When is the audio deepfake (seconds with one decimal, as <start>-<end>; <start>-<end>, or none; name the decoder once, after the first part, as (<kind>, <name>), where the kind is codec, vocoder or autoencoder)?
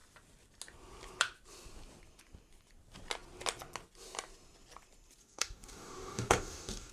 5.2-6.9 (codec, DAC)